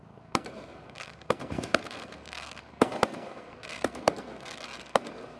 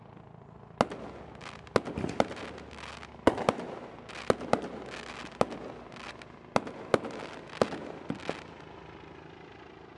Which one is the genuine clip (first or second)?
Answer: second